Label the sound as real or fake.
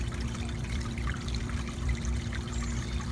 fake